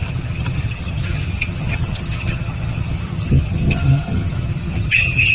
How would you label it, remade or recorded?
remade